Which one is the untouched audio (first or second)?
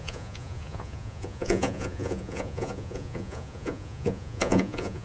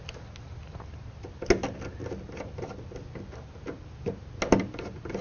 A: second